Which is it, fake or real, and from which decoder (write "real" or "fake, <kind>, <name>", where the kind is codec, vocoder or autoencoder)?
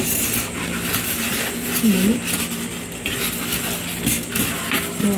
real